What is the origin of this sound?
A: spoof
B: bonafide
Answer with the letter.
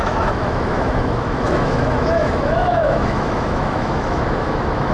A